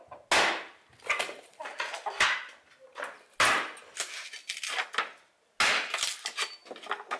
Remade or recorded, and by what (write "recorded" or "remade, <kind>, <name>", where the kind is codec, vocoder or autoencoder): recorded